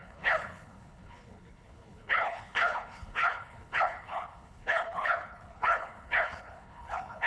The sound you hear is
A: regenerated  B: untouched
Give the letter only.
A